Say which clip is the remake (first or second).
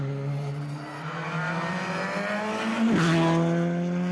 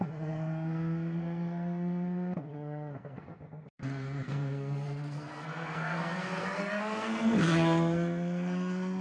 second